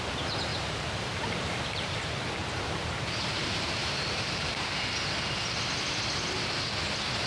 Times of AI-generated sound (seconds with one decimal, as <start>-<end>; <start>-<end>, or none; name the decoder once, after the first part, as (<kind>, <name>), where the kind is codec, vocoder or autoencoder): 0.5-4.8 (vocoder, BigVGAN v2)

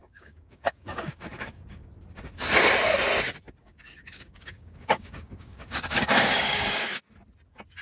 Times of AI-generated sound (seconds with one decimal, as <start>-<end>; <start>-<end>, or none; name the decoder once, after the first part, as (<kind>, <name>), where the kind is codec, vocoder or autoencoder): 0.0-1.9 (codec, DAC); 3.6-7.0

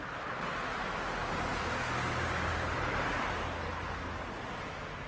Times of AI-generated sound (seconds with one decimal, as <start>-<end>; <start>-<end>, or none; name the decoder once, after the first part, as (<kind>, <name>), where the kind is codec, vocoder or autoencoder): none

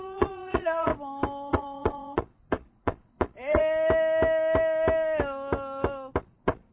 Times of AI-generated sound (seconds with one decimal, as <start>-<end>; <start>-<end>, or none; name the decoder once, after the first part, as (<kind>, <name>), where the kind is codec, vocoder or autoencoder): 0.0-0.9 (vocoder, Vocos); 1.5-3.6; 6.2-6.7